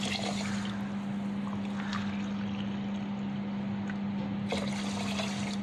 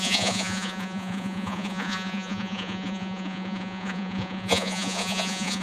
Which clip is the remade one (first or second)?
second